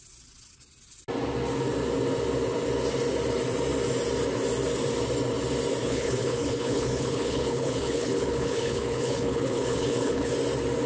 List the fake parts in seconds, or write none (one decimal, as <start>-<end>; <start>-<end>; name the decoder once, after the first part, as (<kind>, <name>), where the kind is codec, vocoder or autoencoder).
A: 5.8-10.3 (codec, HILCodec)